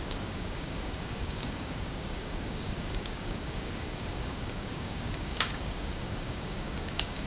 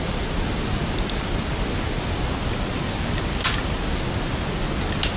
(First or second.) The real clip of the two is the second